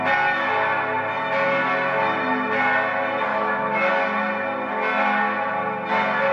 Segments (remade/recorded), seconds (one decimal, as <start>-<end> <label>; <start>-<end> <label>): 0.0-3.3 recorded; 3.3-3.9 remade; 3.9-6.3 recorded